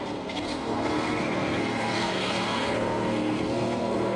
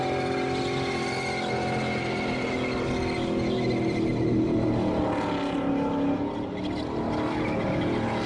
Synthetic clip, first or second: first